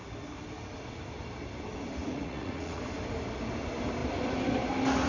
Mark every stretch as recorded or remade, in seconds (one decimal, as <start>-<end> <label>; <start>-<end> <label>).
0.0-2.0 recorded; 2.0-2.8 remade; 2.8-5.1 recorded